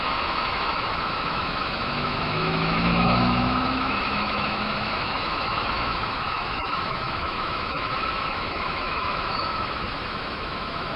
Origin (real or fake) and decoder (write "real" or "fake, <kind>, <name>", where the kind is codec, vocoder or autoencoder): fake, autoencoder, DAC-VAE